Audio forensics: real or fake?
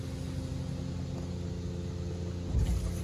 real